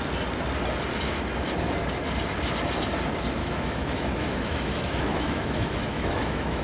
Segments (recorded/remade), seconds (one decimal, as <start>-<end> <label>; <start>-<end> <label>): 0.0-3.4 recorded; 3.4-6.6 remade